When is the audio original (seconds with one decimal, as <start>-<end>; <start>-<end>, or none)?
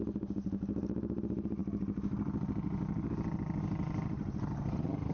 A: 0.0-5.1